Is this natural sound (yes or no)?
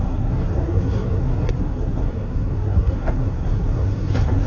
no